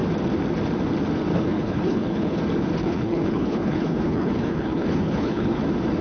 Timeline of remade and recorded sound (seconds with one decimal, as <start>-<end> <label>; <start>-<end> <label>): 0.0-1.3 recorded; 1.3-2.4 remade; 2.4-2.8 recorded; 2.8-5.6 remade; 5.6-6.0 recorded